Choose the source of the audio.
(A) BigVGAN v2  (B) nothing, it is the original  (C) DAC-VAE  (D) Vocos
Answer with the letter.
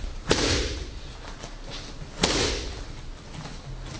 B